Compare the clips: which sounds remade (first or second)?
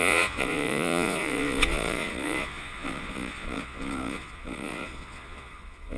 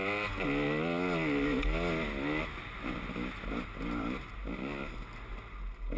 first